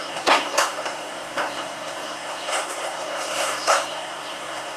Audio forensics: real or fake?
fake